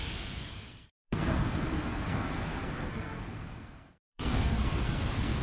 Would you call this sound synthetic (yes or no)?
yes